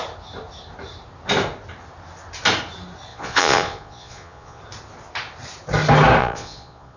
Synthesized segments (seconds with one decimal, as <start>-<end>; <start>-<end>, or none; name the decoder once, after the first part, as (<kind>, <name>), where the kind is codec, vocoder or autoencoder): 3.1-4.6 (vocoder, Vocos); 6.2-7.0